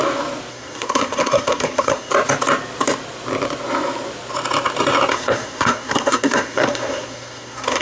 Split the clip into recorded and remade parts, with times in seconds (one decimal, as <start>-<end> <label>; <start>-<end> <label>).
0.0-0.5 recorded; 0.5-2.1 remade; 2.1-5.1 recorded; 5.1-7.8 remade